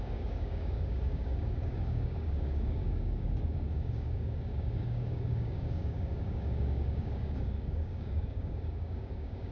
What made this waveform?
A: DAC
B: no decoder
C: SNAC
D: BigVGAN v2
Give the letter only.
A